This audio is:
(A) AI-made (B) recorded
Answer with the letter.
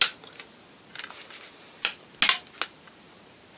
B